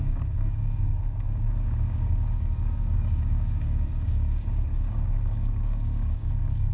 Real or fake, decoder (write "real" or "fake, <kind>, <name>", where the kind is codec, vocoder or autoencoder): fake, codec, DAC